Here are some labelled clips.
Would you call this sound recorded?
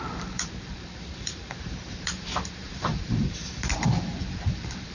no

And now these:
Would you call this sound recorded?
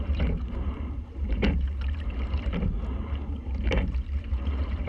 no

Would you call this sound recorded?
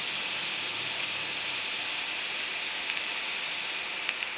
yes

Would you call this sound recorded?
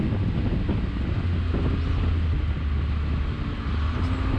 yes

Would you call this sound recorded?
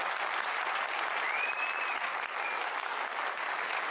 yes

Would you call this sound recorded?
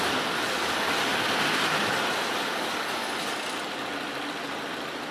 yes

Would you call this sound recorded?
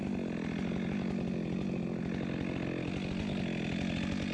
yes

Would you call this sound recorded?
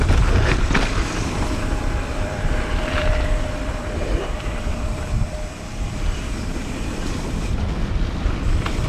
no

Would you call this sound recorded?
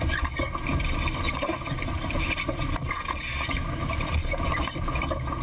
no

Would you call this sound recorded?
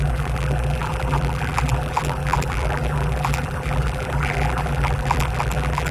no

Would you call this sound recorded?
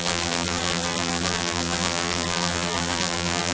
no